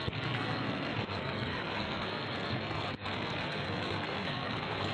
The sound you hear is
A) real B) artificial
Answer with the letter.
B